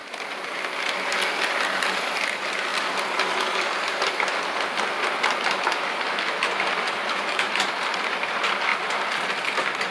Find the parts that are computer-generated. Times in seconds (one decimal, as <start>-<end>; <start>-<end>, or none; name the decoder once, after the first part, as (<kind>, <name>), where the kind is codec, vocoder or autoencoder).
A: 7.0-8.1 (vocoder, BigVGAN v2)